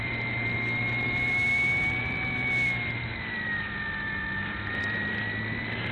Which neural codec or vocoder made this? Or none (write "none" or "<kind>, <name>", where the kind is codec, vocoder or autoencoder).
vocoder, BigVGAN v2